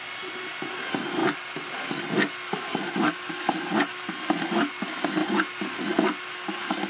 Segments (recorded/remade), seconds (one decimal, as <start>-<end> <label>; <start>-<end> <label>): 0.0-6.9 recorded